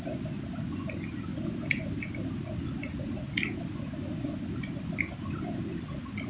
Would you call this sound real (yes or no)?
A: yes